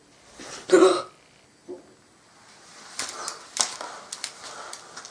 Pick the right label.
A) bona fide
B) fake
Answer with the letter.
A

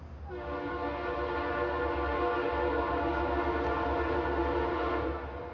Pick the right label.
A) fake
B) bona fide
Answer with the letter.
B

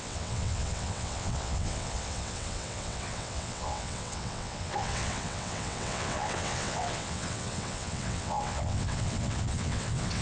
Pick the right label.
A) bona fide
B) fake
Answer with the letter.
B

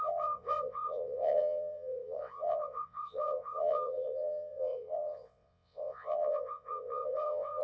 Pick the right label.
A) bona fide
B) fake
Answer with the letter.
B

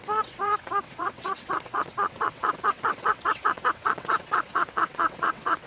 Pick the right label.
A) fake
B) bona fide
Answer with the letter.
A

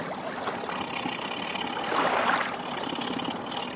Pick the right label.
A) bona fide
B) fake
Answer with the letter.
A